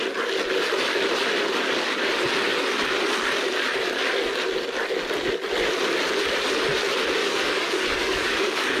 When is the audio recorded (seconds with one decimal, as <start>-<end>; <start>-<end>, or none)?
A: 0.0-7.2

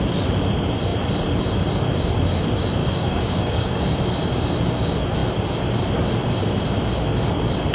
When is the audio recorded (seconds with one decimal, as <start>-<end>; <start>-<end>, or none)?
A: 0.0-2.8; 3.8-7.7

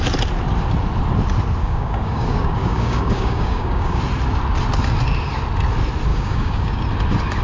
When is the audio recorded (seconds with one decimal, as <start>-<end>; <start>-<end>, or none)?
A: 0.0-1.6; 4.0-6.1; 6.8-7.4

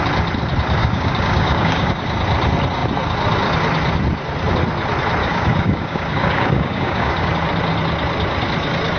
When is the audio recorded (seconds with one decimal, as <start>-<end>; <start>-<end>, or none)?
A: 0.0-0.8; 1.9-5.2; 7.3-9.0